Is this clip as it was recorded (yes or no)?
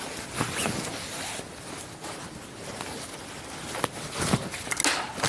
yes